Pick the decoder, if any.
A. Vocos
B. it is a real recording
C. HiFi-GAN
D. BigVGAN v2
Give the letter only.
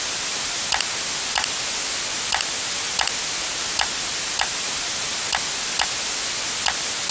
B